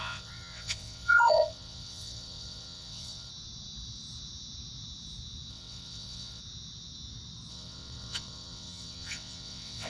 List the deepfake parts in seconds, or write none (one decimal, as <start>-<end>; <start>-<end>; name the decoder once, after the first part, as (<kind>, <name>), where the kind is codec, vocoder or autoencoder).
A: 0.0-3.3 (vocoder, WaveNeXt); 5.5-6.4; 7.5-9.9